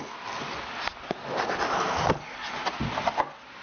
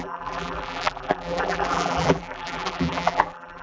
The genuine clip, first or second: first